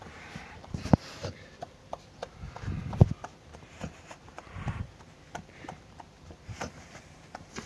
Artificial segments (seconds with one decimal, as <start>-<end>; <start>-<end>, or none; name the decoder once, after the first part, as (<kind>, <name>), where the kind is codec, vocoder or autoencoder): 0.0-2.2 (vocoder, BigVGAN v2); 3.2-7.7